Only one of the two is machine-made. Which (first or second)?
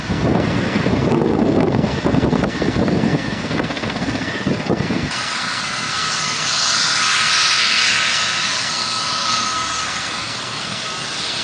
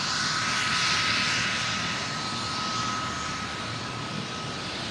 first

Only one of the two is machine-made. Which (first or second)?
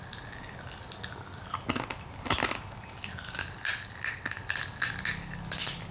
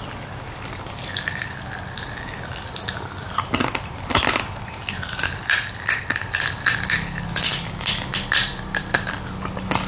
second